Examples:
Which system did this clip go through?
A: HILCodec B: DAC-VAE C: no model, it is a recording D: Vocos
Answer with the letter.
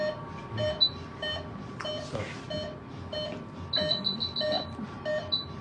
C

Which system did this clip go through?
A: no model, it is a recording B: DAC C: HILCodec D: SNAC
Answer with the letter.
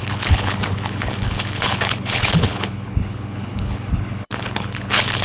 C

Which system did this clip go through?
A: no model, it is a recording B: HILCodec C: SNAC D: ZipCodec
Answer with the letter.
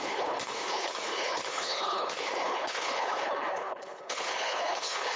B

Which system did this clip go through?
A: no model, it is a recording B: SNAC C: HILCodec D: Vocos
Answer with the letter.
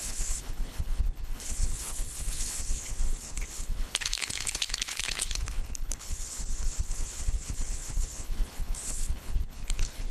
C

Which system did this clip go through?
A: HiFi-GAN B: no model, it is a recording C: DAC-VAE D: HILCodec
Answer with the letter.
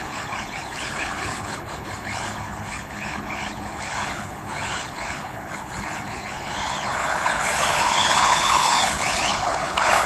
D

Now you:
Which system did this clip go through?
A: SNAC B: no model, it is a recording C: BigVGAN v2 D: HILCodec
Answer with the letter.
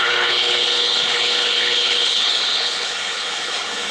D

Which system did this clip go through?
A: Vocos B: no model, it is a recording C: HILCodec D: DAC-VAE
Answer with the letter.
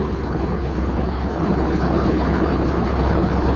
C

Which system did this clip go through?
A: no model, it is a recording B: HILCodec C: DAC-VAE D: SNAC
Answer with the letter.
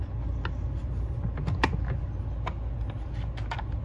A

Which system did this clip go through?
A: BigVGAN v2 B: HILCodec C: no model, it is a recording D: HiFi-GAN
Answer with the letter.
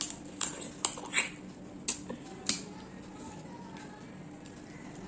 C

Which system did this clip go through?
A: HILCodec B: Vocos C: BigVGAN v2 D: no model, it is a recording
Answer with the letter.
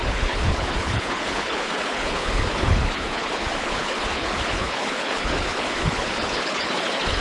A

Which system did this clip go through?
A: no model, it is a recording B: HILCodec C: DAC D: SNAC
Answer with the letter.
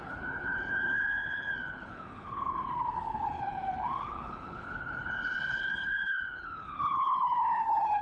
B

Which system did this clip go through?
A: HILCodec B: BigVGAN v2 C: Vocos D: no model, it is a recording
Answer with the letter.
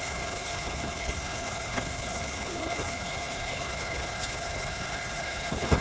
A